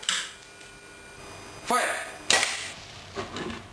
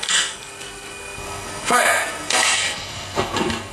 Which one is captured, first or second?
first